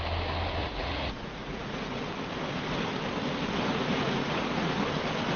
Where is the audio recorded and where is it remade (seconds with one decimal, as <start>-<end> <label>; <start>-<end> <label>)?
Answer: 0.0-0.6 recorded; 0.6-2.0 remade; 2.0-3.7 recorded; 3.7-4.8 remade; 4.8-5.4 recorded